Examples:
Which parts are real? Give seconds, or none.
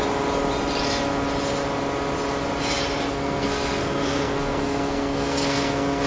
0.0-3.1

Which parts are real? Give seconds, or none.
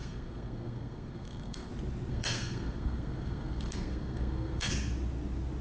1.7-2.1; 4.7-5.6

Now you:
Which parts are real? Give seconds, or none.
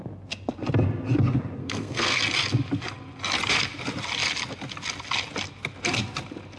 0.0-1.6; 2.2-6.6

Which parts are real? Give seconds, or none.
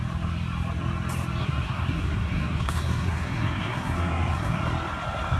0.0-1.4; 4.6-5.4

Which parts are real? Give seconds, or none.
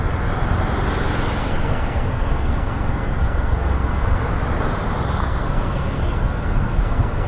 0.0-1.4; 4.3-5.2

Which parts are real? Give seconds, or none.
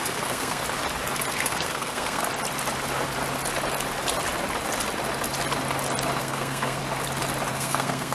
0.6-1.3; 2.2-6.2; 6.8-7.5